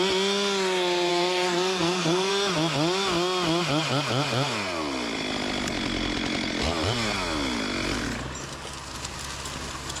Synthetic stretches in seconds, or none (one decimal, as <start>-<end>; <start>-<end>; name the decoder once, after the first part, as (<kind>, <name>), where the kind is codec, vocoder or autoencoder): 1.1-2.3 (codec, SNAC)

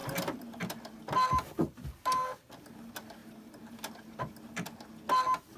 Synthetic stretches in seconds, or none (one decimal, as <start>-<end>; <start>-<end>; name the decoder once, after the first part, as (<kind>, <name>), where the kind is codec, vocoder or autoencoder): none

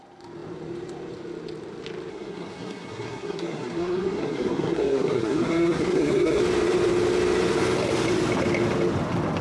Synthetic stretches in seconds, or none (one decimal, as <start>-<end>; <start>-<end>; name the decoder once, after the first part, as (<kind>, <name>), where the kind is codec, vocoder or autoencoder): 2.1-6.4 (codec, SNAC)

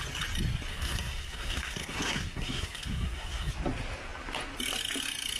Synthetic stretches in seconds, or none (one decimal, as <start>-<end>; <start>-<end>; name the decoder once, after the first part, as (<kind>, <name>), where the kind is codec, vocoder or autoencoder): 0.7-3.5 (codec, SNAC)

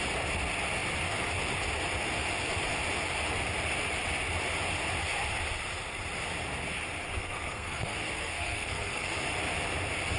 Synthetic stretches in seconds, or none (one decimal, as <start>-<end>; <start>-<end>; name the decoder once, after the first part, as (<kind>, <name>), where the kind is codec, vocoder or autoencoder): 7.2-9.2 (codec, SNAC)

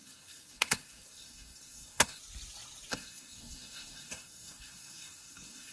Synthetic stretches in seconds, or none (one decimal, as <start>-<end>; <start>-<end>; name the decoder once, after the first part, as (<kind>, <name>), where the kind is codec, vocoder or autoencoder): 0.0-2.2 (codec, SNAC); 2.9-5.7

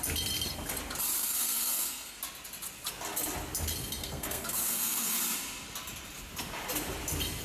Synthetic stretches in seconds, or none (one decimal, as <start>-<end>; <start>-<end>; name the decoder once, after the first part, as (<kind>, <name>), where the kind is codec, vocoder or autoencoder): 1.2-2.2 (codec, SNAC); 4.0-5.2

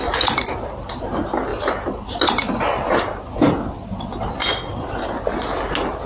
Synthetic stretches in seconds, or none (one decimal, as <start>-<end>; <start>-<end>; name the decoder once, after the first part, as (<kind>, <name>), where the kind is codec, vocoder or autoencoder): none